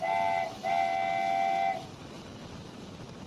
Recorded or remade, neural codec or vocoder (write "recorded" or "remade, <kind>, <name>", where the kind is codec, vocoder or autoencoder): recorded